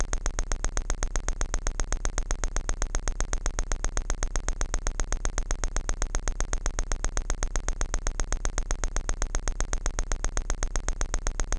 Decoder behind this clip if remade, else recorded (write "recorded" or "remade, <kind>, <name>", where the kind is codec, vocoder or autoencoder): recorded